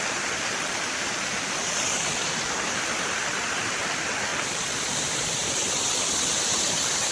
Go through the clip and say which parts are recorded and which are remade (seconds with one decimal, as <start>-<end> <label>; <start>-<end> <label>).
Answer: 0.0-4.3 remade; 4.3-5.0 recorded; 5.0-7.1 remade